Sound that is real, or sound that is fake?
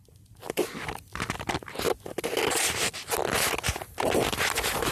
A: real